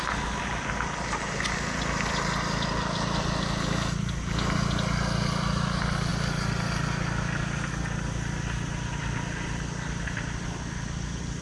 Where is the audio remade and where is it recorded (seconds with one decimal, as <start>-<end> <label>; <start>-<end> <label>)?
0.0-11.4 recorded